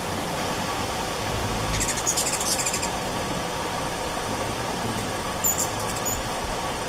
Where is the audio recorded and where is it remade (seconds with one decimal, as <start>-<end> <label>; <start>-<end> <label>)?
0.0-6.9 recorded